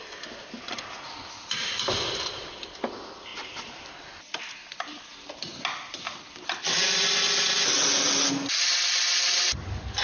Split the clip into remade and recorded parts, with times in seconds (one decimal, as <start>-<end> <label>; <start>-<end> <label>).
0.0-10.0 recorded

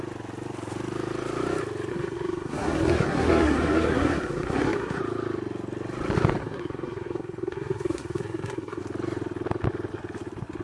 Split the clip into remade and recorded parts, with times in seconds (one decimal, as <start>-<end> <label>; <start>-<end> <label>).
0.0-1.9 recorded; 1.9-5.0 remade; 5.0-6.4 recorded; 6.4-8.8 remade; 8.8-10.6 recorded

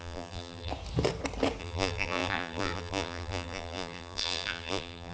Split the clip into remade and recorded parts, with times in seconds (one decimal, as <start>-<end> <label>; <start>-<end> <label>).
0.0-0.7 remade; 0.7-1.6 recorded; 1.6-5.1 remade

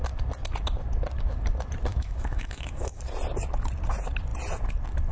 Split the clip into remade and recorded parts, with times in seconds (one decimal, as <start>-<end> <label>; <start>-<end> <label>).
0.0-1.9 recorded; 1.9-3.0 remade; 3.0-5.1 recorded

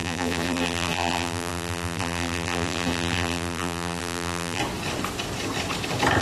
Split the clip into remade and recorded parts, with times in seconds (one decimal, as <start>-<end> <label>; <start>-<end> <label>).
0.0-4.6 remade; 4.6-6.2 recorded

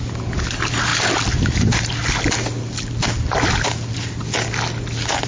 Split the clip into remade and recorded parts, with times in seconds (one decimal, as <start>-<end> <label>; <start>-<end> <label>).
0.0-5.3 recorded